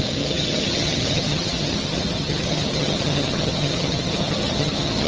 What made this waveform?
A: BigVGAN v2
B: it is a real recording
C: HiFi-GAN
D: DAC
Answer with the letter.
C